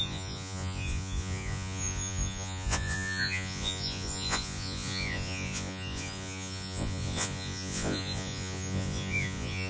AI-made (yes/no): yes